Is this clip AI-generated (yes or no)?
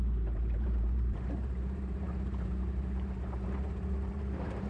yes